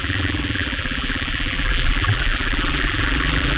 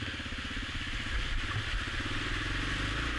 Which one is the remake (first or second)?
first